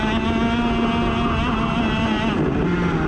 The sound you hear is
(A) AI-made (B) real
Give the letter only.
B